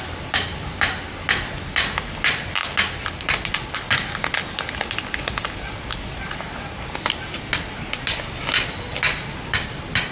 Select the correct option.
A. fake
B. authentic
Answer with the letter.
B